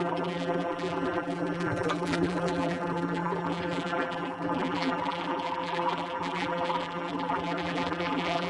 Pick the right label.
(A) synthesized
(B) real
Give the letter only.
A